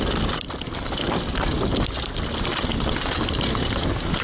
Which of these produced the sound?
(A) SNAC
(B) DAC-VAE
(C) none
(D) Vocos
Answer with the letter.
C